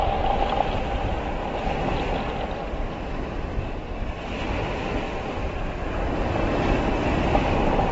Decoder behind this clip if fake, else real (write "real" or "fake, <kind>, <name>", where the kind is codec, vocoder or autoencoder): real